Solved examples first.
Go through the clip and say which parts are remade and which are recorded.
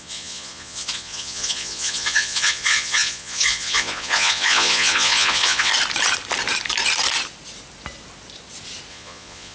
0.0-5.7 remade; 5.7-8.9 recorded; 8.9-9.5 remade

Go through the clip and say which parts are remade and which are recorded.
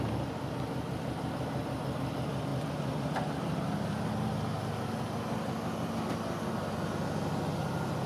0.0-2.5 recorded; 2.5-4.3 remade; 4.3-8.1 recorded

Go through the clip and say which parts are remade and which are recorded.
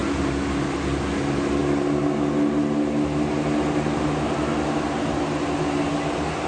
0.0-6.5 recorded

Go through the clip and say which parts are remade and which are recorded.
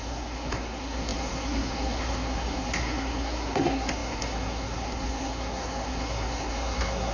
0.0-7.1 remade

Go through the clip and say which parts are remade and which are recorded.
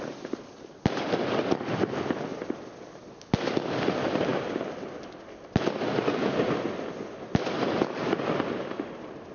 0.0-9.3 recorded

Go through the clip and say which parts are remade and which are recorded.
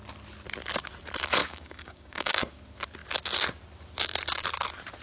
0.0-1.4 recorded; 1.4-2.6 remade; 2.6-5.0 recorded